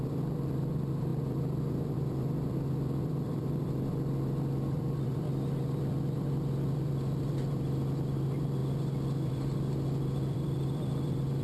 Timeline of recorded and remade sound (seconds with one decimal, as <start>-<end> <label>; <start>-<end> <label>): 0.0-8.6 remade; 8.6-9.3 recorded; 9.3-11.4 remade

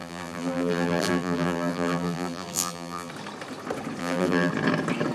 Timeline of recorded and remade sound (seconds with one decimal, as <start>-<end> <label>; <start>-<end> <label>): 0.0-3.1 remade; 3.1-4.0 recorded; 4.0-4.5 remade; 4.5-5.1 recorded

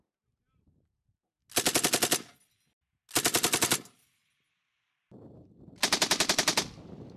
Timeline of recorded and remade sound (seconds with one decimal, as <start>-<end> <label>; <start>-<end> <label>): 0.0-7.2 recorded